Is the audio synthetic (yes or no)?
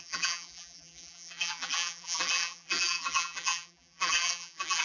yes